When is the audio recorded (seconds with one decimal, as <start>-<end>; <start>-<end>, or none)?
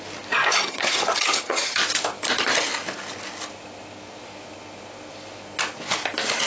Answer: 0.0-0.5; 1.8-6.5